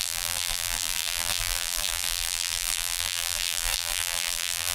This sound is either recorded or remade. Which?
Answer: remade